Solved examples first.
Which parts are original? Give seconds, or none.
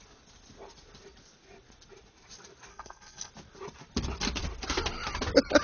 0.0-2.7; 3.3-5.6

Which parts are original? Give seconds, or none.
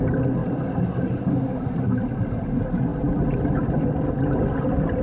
0.0-5.0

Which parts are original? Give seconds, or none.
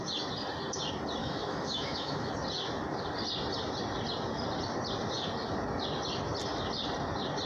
0.0-1.2; 2.3-7.5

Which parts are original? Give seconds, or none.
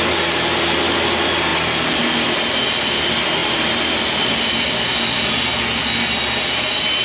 0.0-3.4; 4.4-7.0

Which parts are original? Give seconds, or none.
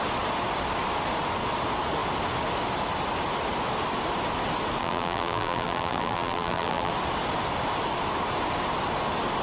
0.0-4.8; 6.9-9.4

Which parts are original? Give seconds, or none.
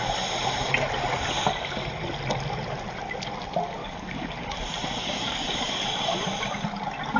0.0-3.8; 4.5-5.0; 5.8-7.2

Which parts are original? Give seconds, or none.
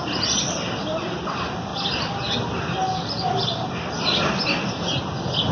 0.0-5.5